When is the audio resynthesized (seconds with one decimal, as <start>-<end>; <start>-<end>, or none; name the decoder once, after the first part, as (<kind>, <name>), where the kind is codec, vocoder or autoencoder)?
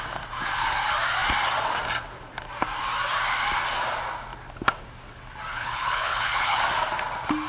5.5-6.6 (codec, HILCodec)